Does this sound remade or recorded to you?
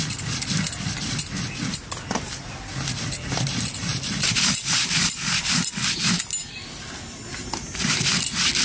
recorded